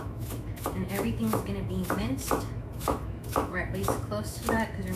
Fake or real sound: fake